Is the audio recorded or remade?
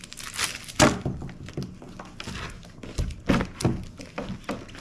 recorded